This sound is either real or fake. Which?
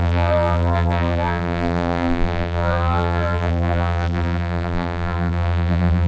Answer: fake